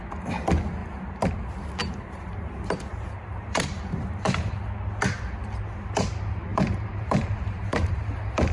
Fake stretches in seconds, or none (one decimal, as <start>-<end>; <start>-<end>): 0.8-1.3; 1.8-2.5; 2.9-4.6; 6.5-8.0